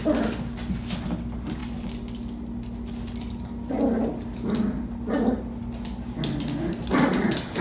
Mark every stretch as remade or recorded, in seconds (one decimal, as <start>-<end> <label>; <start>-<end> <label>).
0.0-7.6 recorded